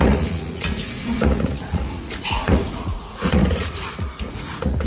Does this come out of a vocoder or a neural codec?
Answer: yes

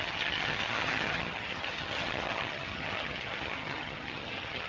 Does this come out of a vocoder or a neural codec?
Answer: yes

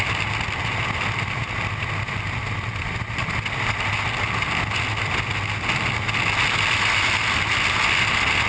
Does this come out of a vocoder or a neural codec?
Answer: no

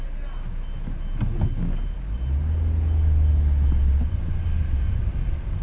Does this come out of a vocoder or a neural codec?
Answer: no